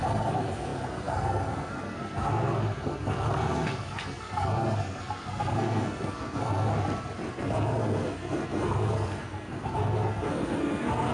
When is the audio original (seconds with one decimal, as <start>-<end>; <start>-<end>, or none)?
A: 6.7-7.3